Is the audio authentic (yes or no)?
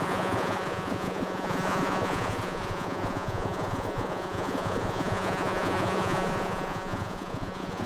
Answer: no